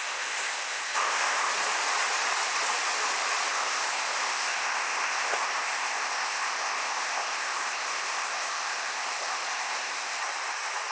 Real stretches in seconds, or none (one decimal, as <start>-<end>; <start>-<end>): 1.5-3.5; 10.2-10.9